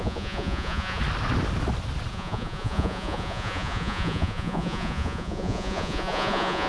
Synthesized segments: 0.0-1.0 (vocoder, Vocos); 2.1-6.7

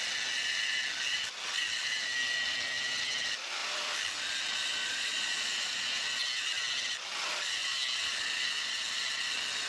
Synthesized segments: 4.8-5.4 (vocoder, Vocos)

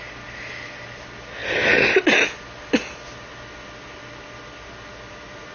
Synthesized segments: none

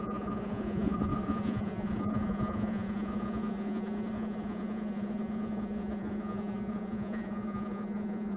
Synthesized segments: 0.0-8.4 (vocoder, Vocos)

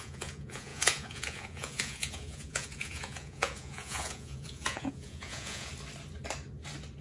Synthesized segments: 0.0-5.7 (vocoder, Vocos)